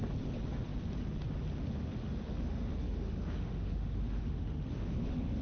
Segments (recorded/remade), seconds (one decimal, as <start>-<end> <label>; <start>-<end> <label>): 0.0-2.0 recorded; 2.0-5.4 remade